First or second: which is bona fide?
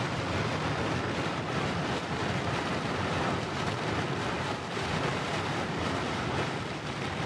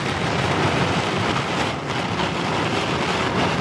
second